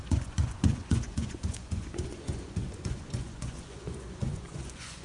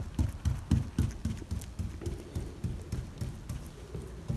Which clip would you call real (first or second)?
second